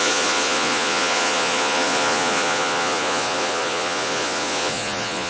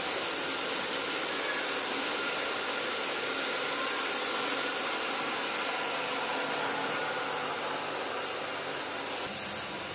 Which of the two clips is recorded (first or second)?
second